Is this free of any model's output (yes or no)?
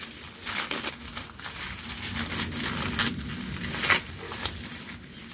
yes